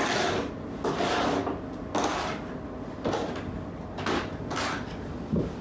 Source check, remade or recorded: recorded